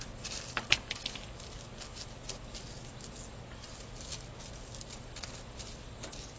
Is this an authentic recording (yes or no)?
yes